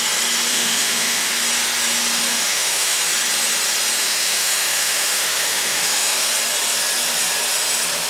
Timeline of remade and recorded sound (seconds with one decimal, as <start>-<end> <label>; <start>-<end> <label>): 0.0-0.5 recorded; 0.5-1.3 remade; 1.3-2.3 recorded; 2.3-3.0 remade; 3.0-4.0 recorded; 4.0-6.3 remade; 6.3-8.1 recorded